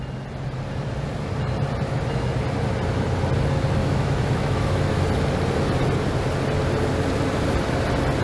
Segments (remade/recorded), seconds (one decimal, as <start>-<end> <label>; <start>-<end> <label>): 0.0-3.8 recorded; 3.8-5.0 remade; 5.0-8.2 recorded